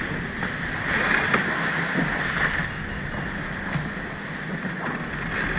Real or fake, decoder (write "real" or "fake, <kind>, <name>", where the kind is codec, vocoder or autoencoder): real